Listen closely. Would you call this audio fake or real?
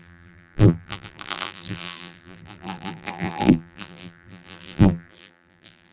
fake